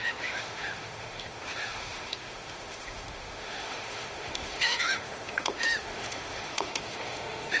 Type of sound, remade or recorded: remade